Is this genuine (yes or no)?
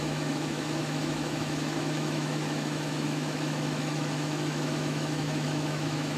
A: no